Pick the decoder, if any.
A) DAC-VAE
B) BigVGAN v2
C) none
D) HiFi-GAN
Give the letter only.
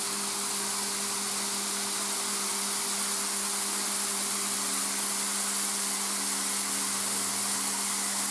C